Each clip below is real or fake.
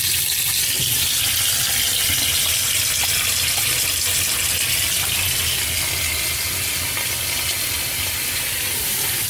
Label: real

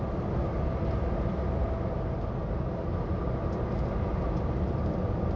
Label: real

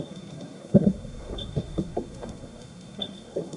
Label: fake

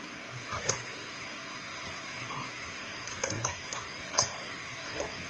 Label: fake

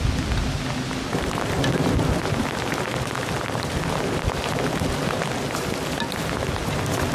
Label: real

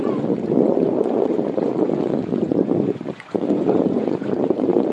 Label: fake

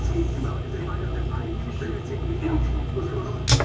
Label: real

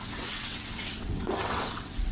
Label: fake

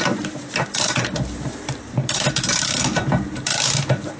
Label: fake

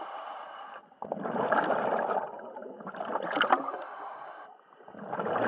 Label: real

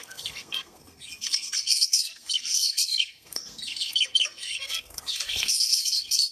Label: fake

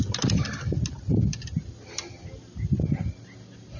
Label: real